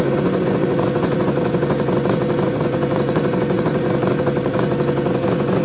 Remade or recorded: remade